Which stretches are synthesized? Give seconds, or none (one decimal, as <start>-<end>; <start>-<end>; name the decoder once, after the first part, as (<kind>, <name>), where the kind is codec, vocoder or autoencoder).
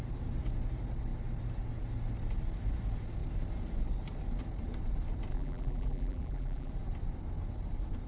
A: 5.3-6.7 (vocoder, BigVGAN v2)